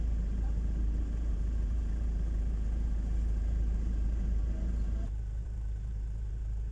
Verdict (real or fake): fake